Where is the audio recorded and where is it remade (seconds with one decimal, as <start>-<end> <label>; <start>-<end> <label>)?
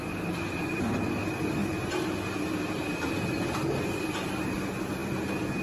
0.0-5.6 recorded